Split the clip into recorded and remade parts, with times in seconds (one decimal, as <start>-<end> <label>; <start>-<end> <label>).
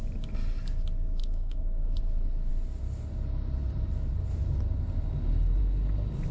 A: 0.0-1.2 recorded; 1.2-1.9 remade; 1.9-6.3 recorded